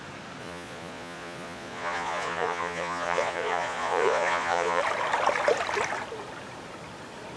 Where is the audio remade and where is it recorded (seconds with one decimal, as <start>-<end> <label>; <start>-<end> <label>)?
0.0-0.4 recorded; 0.4-4.8 remade; 4.8-7.4 recorded